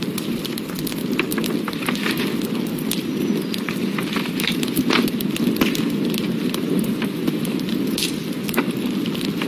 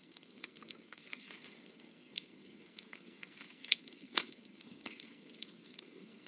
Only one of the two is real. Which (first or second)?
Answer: first